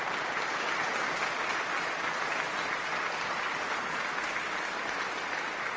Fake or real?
real